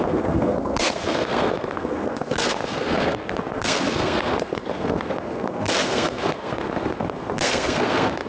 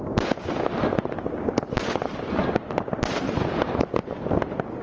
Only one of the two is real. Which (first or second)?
second